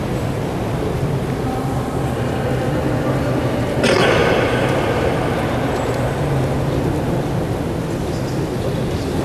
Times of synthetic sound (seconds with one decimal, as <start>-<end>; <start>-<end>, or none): none